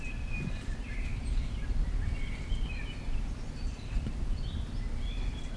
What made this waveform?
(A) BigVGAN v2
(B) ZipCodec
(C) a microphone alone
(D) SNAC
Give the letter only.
C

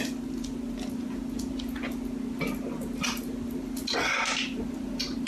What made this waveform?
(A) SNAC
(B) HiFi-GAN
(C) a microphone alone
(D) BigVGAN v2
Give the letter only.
C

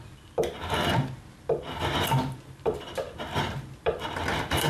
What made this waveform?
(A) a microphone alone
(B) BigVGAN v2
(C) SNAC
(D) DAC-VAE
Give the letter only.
B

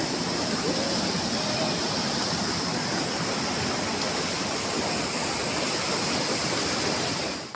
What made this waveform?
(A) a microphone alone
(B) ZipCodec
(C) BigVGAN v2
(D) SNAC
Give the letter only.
A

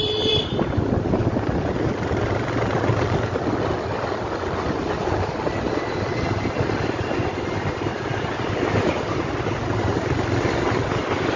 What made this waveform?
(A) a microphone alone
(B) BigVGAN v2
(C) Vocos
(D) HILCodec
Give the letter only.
B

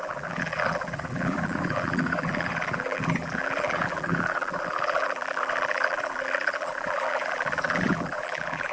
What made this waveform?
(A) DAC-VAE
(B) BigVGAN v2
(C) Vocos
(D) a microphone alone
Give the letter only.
B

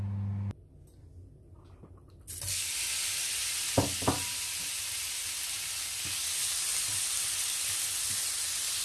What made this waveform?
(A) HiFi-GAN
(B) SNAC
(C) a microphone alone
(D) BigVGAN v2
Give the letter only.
C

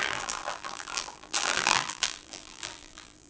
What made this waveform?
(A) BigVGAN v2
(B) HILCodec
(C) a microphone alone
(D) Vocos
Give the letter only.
A